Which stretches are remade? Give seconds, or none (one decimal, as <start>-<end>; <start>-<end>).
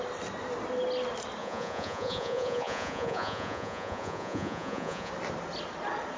1.4-5.1